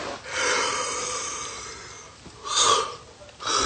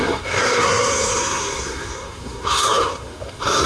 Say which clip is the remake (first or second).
second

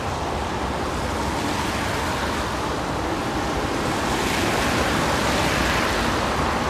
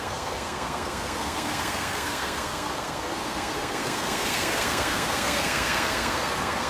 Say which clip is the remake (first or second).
second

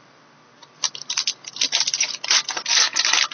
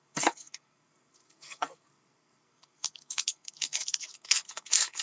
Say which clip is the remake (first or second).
second